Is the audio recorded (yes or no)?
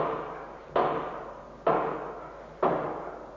yes